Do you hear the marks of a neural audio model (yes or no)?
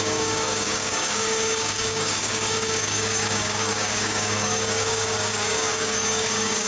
yes